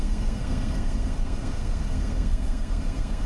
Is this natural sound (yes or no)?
no